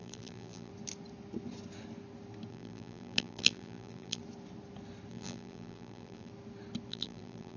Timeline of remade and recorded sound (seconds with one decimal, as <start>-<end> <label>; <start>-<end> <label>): 0.0-0.7 remade; 0.7-2.5 recorded; 2.5-4.2 remade; 4.2-5.1 recorded; 5.1-6.3 remade; 6.3-6.9 recorded; 6.9-7.6 remade